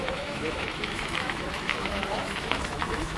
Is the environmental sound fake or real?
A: fake